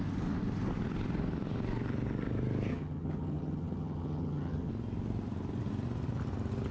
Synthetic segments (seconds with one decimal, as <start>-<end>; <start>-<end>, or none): 2.7-4.7